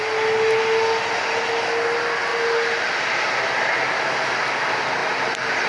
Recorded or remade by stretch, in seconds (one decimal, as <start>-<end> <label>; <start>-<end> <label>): 0.0-5.7 recorded